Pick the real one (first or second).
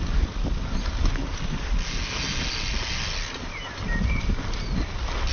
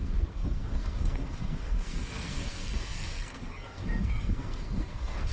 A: first